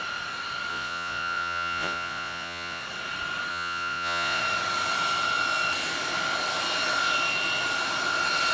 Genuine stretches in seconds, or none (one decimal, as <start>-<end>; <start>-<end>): 0.0-0.7; 2.8-3.5; 4.4-8.5